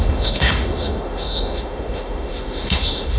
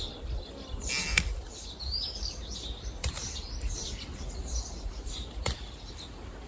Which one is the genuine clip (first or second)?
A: second